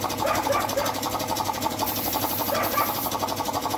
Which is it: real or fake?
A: real